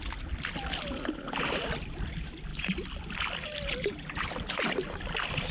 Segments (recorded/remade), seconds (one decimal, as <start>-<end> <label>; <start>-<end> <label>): 0.0-5.5 recorded